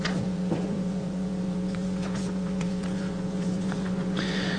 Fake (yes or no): yes